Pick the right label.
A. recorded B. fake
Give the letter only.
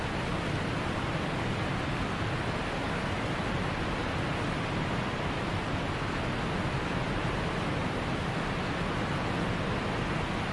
A